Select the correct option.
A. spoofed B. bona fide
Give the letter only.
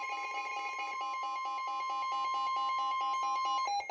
B